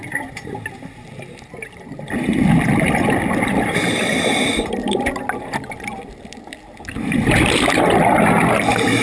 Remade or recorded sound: recorded